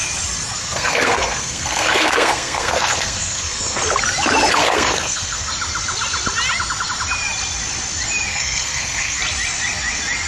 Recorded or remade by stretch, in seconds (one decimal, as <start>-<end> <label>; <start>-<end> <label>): 0.0-0.6 recorded; 0.6-3.8 remade; 3.8-4.5 recorded; 4.5-5.5 remade; 5.5-8.3 recorded; 8.3-9.2 remade; 9.2-10.3 recorded